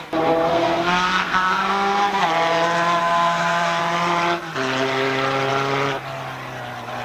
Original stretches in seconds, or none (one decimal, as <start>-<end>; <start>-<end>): 0.0-0.5; 2.3-3.0; 3.8-7.0